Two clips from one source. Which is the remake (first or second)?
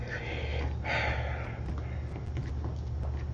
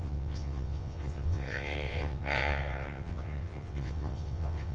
second